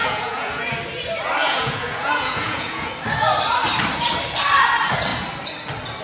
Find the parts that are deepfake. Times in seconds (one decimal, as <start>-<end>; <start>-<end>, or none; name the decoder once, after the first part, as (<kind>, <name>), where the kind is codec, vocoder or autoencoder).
0.0-0.7 (vocoder, Vocos); 1.4-2.9